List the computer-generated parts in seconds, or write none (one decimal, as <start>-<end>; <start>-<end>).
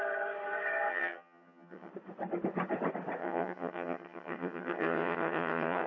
0.9-1.9; 3.2-5.9